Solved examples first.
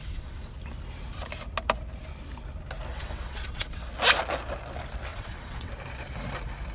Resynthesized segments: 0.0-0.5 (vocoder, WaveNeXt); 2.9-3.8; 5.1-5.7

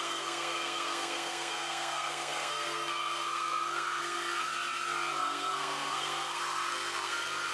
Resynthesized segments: 0.0-4.5 (codec, SNAC); 5.2-7.5

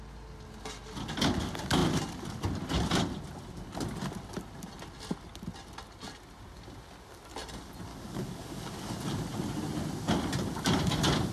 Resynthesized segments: 7.9-8.9 (codec, DAC)

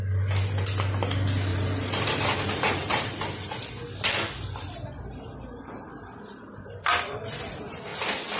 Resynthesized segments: 1.5-3.7 (vocoder, BigVGAN v2)

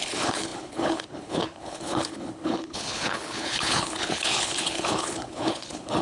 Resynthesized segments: 0.0-6.0 (codec, HILCodec)

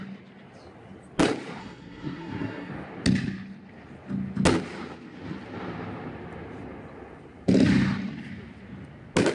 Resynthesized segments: 1.6-2.7 (codec, SNAC)

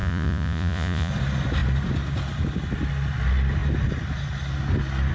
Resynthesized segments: 0.0-1.1 (vocoder, Vocos)

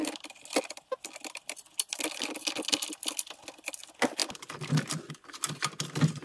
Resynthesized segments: none